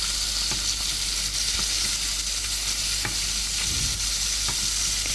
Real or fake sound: real